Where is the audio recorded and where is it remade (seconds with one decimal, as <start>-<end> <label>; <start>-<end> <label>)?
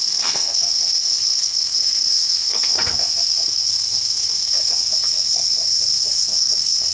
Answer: 0.0-6.9 remade